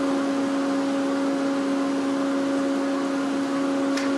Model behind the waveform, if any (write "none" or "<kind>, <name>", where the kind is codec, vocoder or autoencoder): none